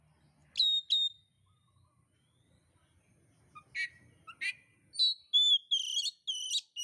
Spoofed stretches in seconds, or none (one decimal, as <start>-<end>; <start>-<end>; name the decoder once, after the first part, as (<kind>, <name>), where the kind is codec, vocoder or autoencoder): none